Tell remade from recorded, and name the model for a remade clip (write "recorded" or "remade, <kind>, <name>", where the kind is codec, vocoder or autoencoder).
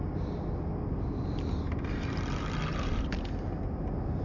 recorded